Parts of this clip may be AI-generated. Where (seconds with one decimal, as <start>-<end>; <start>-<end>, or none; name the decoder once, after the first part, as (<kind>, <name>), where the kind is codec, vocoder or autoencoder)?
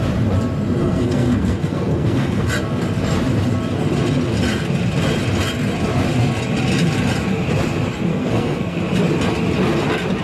0.8-2.5 (codec, SNAC); 8.1-8.8